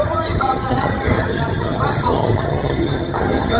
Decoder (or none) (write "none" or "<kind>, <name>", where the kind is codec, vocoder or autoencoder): vocoder, HiFi-GAN